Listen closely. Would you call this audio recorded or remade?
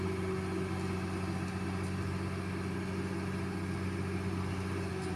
recorded